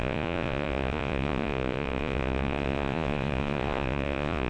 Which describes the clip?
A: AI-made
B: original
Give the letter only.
A